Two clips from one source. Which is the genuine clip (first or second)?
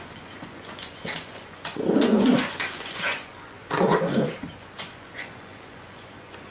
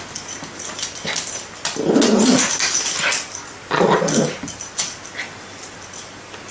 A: second